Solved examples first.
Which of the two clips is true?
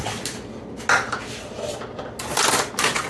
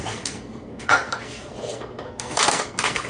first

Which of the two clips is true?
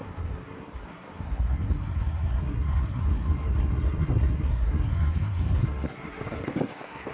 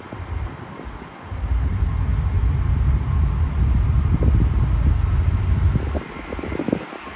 second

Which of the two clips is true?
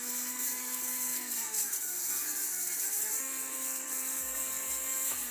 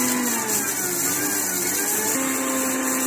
second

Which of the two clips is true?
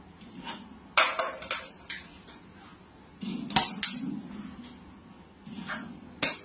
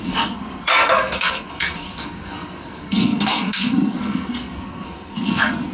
first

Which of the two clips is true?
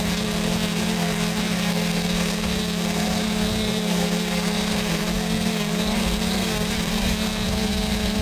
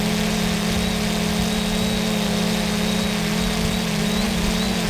second